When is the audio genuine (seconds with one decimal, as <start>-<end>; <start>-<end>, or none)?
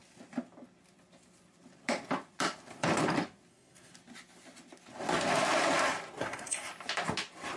0.0-3.5; 3.9-6.2; 6.7-7.6